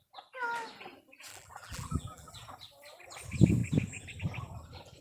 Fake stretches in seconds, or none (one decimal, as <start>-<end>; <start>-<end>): 1.3-2.3